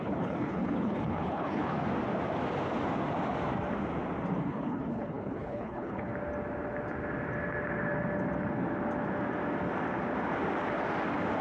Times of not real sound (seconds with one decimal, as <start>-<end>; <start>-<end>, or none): 0.0-1.7; 4.4-6.1